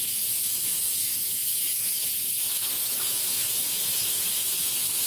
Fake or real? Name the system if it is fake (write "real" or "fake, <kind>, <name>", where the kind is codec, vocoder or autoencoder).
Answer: fake, autoencoder, DAC-VAE